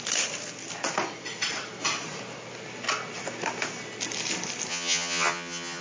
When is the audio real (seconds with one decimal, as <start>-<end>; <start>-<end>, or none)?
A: 0.0-4.7

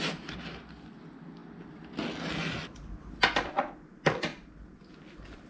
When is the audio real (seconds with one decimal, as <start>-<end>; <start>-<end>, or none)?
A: 0.0-5.5

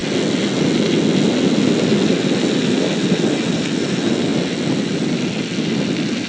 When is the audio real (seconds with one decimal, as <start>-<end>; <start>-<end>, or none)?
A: 0.0-6.3

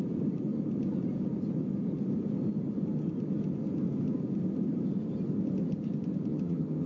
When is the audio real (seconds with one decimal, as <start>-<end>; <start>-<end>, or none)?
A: 0.0-6.3

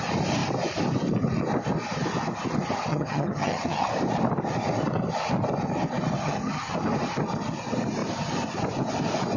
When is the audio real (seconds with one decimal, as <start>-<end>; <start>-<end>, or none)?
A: 0.0-2.9; 3.9-6.2; 6.7-9.4

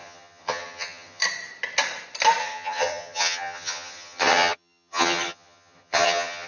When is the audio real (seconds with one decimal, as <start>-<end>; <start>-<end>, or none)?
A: 1.2-2.4

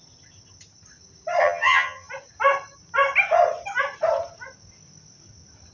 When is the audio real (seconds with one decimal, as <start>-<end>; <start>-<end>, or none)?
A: 0.0-1.4; 2.1-5.7

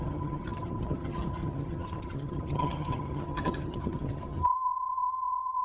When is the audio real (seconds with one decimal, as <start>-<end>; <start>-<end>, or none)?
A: none